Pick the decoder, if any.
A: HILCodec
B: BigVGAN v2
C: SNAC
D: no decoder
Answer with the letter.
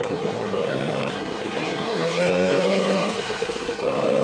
C